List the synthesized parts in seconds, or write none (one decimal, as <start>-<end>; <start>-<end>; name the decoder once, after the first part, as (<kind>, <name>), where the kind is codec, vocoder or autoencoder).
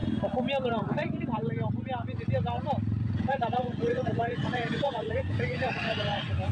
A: 0.7-1.4 (vocoder, Vocos); 3.0-6.5